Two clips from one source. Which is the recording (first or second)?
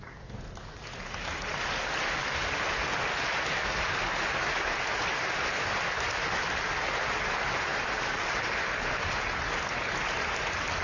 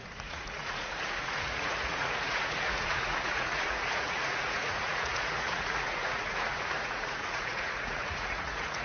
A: first